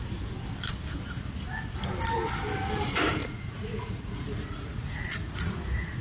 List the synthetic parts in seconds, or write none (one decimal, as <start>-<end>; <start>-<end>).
3.2-6.0